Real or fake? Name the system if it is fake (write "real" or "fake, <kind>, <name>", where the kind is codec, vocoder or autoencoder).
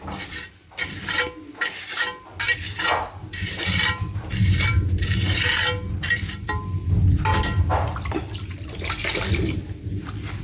real